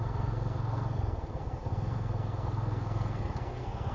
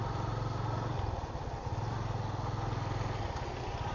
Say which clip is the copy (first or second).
first